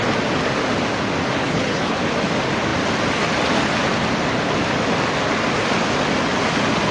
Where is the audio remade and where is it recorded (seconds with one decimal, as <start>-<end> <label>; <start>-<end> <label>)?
0.0-1.4 recorded; 1.4-2.0 remade; 2.0-6.9 recorded